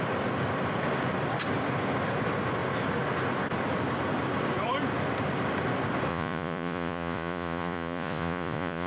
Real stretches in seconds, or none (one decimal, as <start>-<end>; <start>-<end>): 0.0-6.1